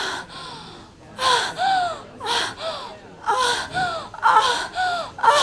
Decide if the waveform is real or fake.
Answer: real